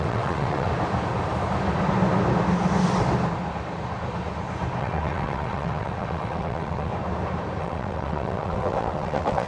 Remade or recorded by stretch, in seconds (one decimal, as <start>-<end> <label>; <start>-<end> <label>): 0.0-0.7 remade; 0.7-4.8 recorded; 4.8-6.9 remade; 6.9-7.6 recorded; 7.6-9.5 remade